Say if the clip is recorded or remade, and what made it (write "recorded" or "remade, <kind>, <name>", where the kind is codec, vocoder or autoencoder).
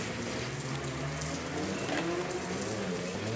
recorded